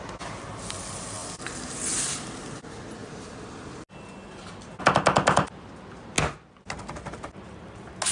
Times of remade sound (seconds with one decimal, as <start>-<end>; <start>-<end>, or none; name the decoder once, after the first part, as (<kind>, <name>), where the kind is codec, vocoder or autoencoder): 1.2-2.5 (vocoder, BigVGAN v2); 3.0-3.7